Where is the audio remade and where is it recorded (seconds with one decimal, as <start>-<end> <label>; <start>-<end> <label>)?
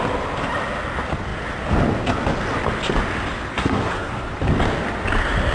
0.0-3.5 recorded; 3.5-4.3 remade; 4.3-5.5 recorded